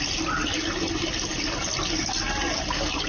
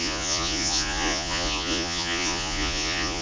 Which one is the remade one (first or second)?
second